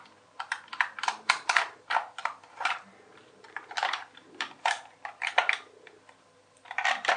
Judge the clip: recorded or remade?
remade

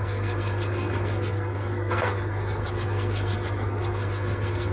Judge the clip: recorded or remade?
remade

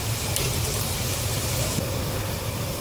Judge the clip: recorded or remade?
remade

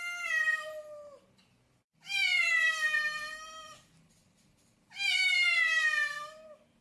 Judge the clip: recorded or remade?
recorded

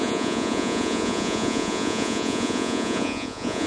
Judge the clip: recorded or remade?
remade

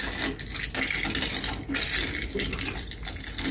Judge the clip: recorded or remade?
recorded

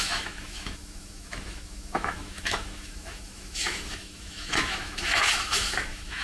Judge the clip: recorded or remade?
remade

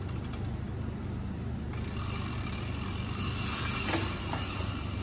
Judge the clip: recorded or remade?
recorded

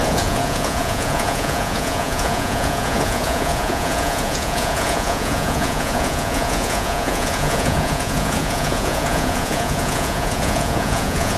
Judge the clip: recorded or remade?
remade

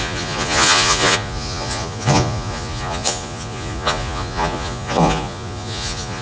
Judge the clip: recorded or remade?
remade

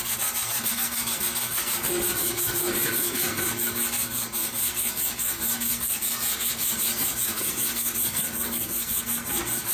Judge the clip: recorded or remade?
remade